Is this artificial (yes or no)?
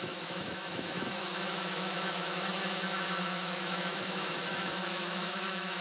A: yes